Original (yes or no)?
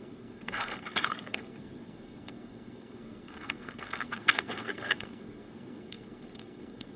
no